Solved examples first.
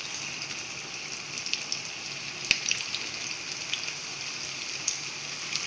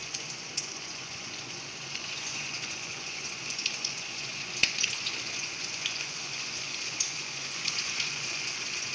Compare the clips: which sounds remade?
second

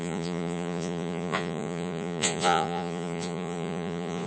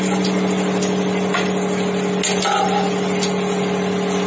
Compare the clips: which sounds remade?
first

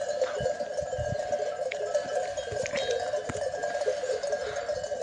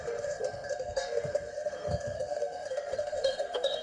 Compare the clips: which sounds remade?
second